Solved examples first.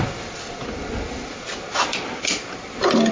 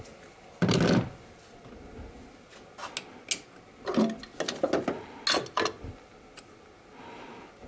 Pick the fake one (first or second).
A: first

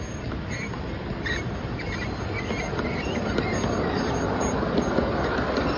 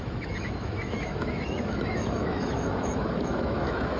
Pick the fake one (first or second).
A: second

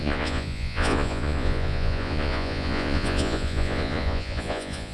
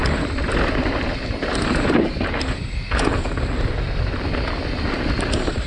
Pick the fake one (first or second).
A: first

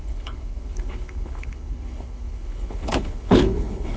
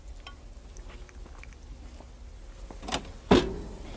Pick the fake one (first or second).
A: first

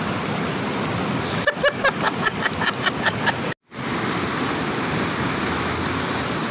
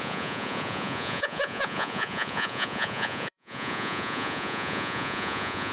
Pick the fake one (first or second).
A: second